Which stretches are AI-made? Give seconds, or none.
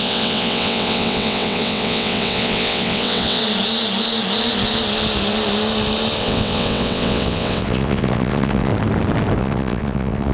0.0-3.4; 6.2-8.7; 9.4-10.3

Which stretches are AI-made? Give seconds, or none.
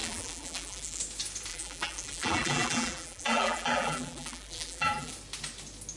0.0-1.0; 1.5-5.1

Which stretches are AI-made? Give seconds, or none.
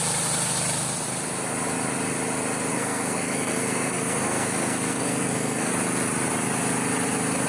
2.7-5.7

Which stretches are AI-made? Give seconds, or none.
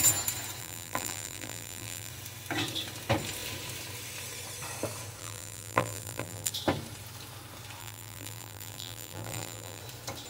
0.6-2.1; 5.2-6.5; 7.8-9.8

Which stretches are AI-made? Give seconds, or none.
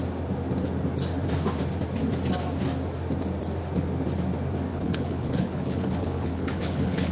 4.7-7.1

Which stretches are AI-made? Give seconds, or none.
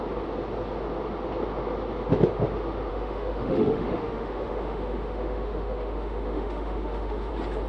2.9-7.3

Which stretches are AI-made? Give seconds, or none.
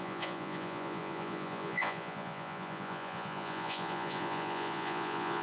0.0-5.4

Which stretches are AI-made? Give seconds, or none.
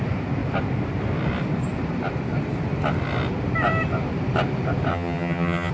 4.9-5.7